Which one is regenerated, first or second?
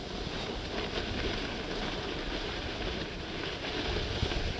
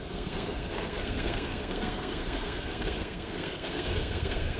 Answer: second